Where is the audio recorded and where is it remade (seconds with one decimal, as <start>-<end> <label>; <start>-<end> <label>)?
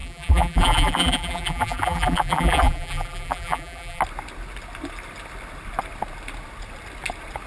0.0-4.0 remade; 4.0-7.5 recorded